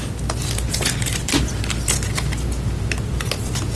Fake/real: real